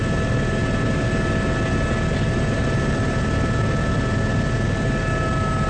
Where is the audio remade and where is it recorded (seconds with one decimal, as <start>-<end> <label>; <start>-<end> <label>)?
0.0-5.7 recorded